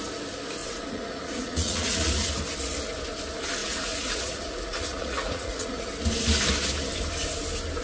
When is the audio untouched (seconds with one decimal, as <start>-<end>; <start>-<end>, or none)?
0.0-0.6; 2.1-3.6; 5.9-7.8